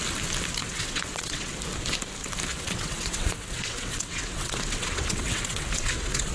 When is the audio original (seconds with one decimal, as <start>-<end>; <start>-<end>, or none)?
0.0-0.6; 1.5-2.5